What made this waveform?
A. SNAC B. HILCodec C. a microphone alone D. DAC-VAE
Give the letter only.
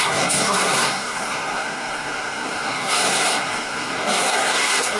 A